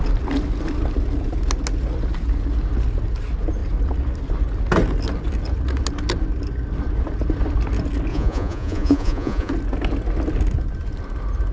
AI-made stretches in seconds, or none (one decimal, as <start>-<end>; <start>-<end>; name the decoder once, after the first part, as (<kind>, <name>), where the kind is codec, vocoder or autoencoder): 8.1-9.5 (vocoder, Vocos)